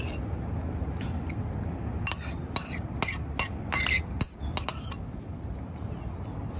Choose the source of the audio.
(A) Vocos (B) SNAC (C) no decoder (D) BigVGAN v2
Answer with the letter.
C